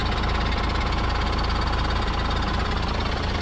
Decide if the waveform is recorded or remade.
recorded